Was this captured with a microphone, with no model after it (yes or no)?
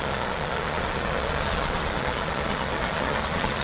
no